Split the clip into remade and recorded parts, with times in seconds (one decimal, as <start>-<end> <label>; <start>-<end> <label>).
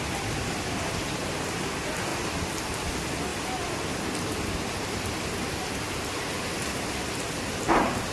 0.0-8.1 recorded